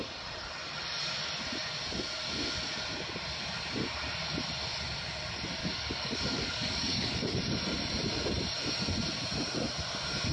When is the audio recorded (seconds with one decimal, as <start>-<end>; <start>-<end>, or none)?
0.0-5.6; 7.4-10.3